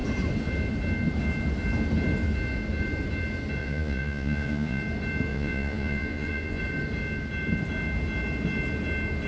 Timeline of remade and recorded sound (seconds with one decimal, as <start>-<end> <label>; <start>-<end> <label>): 0.0-3.6 recorded; 3.6-4.8 remade; 4.8-5.3 recorded; 5.3-6.6 remade; 6.6-9.3 recorded